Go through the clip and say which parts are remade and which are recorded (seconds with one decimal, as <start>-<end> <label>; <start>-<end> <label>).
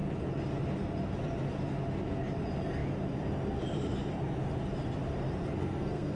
0.0-5.6 recorded; 5.6-6.2 remade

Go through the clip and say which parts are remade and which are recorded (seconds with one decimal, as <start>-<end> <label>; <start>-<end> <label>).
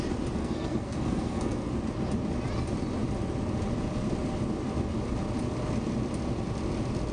0.0-0.4 recorded; 0.4-1.7 remade; 1.7-7.1 recorded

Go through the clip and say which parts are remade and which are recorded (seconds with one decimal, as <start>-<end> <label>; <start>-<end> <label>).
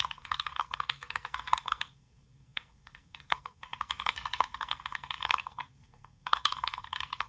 0.0-7.3 remade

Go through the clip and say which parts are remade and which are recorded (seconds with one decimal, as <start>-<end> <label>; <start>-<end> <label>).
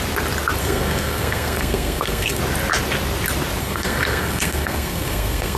0.0-0.6 recorded; 0.6-2.4 remade; 2.4-3.6 recorded; 3.6-5.6 remade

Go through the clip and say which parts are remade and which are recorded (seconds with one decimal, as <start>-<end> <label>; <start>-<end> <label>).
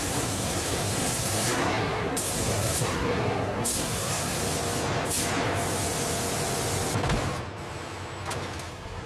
0.0-4.4 remade; 4.4-8.7 recorded; 8.7-9.1 remade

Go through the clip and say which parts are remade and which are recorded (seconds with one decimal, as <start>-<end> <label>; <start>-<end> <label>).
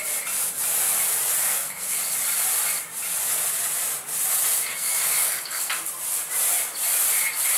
0.0-1.4 recorded; 1.4-2.0 remade; 2.0-4.7 recorded; 4.7-5.7 remade; 5.7-7.6 recorded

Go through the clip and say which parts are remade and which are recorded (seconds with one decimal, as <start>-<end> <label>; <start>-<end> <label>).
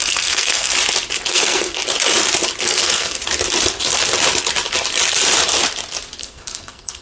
0.0-0.7 remade; 0.7-1.3 recorded; 1.3-1.8 remade; 1.8-2.6 recorded; 2.6-3.2 remade; 3.2-6.2 recorded; 6.2-7.0 remade